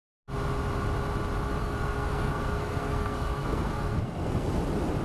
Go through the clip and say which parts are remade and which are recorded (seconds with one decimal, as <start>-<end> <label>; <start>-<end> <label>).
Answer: 0.0-1.6 recorded; 1.6-4.6 remade; 4.6-5.0 recorded